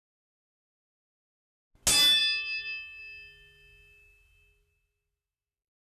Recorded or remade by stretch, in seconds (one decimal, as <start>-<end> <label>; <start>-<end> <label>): 0.0-5.9 recorded